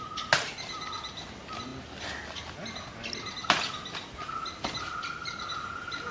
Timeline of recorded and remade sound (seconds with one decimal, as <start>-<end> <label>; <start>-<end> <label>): 0.0-6.1 recorded